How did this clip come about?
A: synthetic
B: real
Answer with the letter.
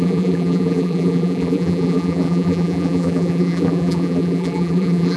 A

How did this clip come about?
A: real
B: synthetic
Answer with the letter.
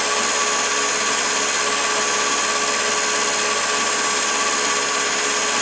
A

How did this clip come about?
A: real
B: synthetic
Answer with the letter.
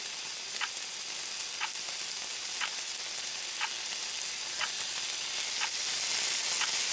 A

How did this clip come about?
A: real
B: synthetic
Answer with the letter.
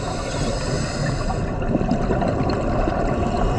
A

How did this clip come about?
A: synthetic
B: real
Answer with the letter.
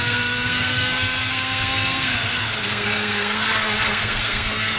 A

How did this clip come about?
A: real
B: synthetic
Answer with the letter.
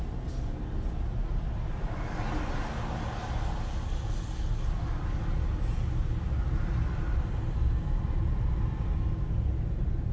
A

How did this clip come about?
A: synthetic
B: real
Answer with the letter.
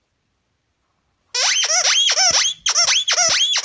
B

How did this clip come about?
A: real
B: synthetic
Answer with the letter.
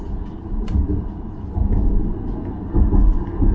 A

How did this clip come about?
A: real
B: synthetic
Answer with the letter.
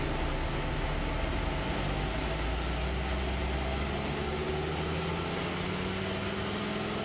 A